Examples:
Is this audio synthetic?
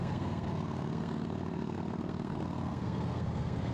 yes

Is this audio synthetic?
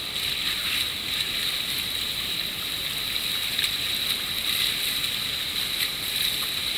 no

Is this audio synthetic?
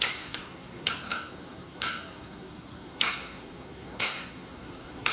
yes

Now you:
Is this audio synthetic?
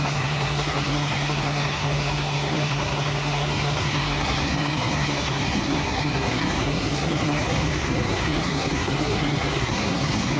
yes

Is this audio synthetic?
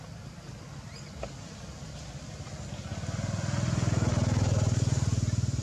no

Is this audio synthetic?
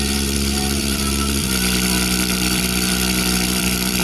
yes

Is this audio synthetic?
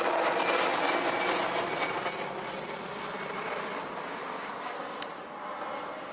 no